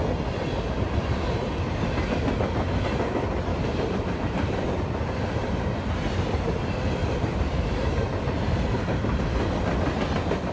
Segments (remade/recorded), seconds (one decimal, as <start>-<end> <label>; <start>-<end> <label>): 0.0-3.5 recorded; 3.5-4.8 remade; 4.8-7.0 recorded; 7.0-8.4 remade; 8.4-10.5 recorded